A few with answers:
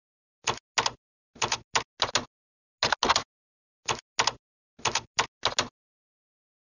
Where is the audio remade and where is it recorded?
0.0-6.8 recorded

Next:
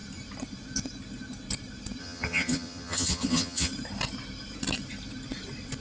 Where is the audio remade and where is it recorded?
0.0-2.0 recorded; 2.0-3.7 remade; 3.7-5.8 recorded